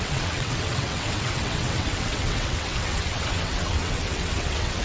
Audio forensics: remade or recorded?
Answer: remade